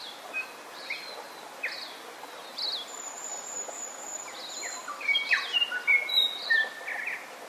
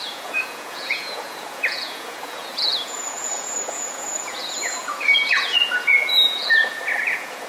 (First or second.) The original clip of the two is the first